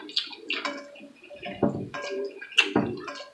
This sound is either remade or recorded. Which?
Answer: recorded